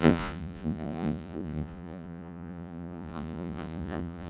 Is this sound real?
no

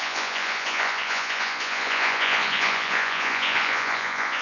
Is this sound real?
no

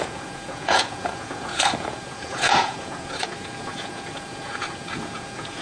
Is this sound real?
no